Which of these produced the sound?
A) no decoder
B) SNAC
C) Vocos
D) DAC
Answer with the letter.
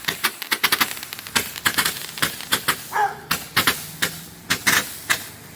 A